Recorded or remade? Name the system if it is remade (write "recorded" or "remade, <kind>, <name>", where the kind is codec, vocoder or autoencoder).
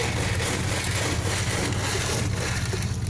recorded